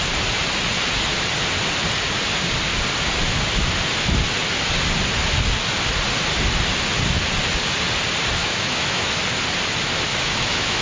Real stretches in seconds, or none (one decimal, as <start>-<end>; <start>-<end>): 0.0-8.4; 9.1-10.1